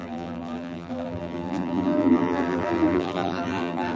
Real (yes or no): no